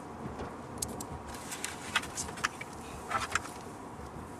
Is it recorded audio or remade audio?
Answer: recorded